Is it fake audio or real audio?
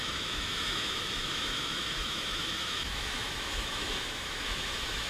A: fake